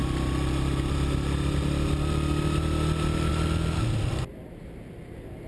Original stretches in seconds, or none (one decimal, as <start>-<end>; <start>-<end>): 0.0-5.5